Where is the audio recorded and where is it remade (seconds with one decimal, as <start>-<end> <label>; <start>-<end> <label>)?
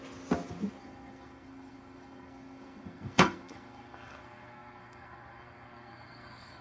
0.0-0.8 recorded; 0.8-6.6 remade